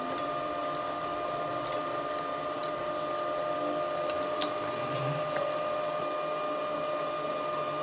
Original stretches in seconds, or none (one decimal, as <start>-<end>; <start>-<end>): 0.0-0.6; 2.2-2.6; 3.6-7.8

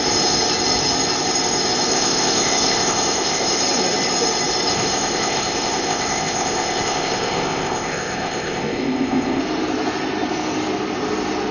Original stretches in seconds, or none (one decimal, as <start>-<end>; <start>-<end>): 0.0-1.9; 3.6-4.7; 9.4-11.5

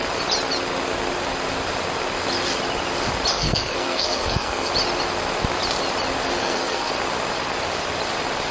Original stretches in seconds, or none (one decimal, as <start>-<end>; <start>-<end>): 0.0-3.3; 4.7-6.4; 6.9-8.5

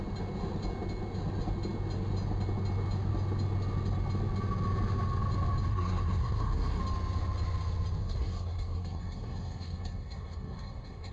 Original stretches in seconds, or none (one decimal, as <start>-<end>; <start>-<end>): 0.0-5.7; 6.8-8.0

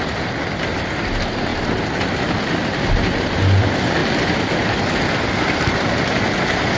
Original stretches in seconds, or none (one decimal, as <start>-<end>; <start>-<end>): 0.0-6.8

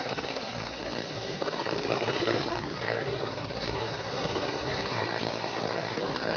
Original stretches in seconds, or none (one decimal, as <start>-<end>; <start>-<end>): none

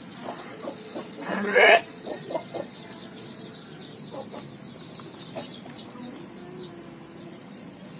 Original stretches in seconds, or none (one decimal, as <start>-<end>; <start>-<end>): 3.5-5.3; 6.4-7.2